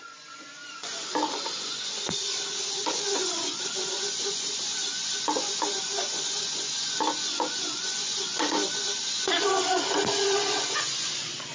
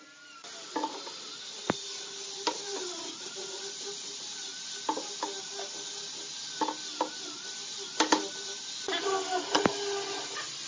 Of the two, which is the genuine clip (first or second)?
second